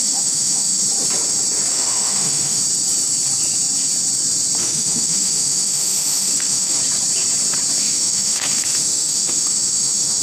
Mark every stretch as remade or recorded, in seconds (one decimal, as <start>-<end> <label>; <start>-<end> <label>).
0.0-0.8 remade; 0.8-1.7 recorded; 1.7-2.6 remade; 2.6-4.6 recorded; 4.6-6.8 remade; 6.8-7.8 recorded; 7.8-10.2 remade